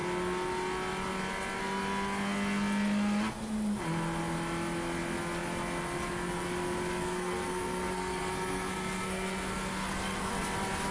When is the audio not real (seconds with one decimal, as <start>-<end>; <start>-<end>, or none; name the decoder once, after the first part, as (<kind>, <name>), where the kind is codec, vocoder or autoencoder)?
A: 7.0-10.3 (codec, SNAC)